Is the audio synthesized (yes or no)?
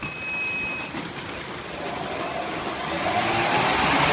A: no